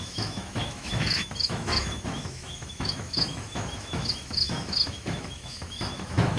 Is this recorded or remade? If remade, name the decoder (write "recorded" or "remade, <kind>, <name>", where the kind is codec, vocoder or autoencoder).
remade, autoencoder, DAC-VAE